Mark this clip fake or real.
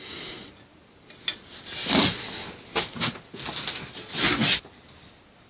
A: real